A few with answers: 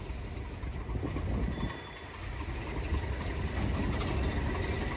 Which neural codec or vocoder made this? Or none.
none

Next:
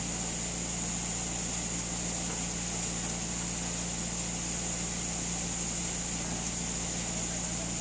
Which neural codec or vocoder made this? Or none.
none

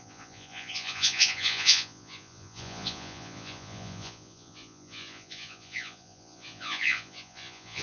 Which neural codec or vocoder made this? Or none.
vocoder, Vocos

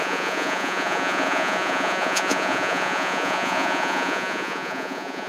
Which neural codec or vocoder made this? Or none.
vocoder, Vocos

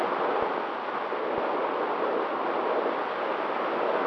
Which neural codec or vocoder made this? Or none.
none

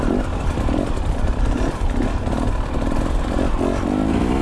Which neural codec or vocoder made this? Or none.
none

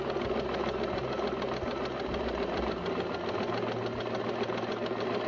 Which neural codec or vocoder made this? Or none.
none